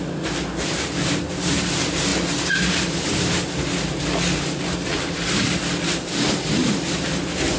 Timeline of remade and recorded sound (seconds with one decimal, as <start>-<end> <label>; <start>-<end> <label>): 0.0-7.6 recorded